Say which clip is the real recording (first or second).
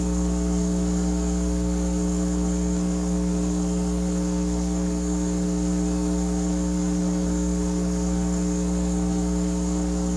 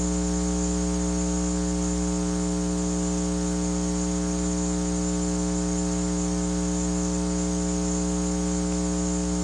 second